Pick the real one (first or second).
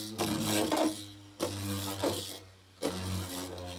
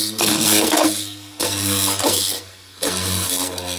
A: first